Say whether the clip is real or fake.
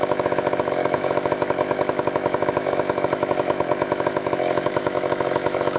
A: fake